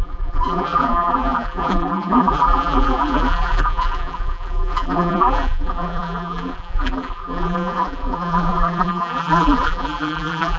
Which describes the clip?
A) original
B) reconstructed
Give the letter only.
B